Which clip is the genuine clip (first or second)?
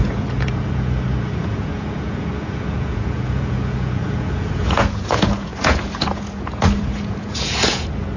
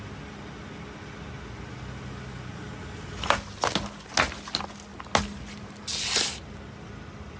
second